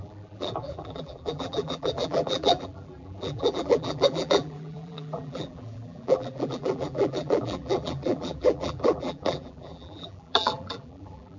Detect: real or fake fake